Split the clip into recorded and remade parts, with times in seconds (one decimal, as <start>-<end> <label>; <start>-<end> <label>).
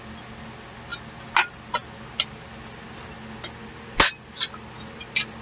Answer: 0.0-5.4 recorded